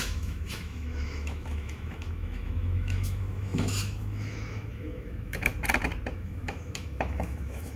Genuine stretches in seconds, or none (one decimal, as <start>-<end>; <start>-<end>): 5.5-6.1